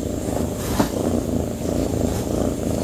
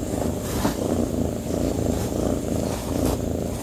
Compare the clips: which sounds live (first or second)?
first